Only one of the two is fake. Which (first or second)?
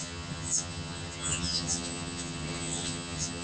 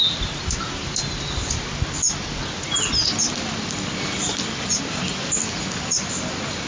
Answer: first